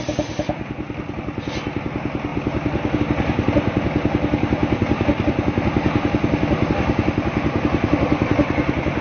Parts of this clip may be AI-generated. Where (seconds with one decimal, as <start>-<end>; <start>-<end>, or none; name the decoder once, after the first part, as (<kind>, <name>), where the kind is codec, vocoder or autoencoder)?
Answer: 2.3-3.0 (vocoder, BigVGAN v2)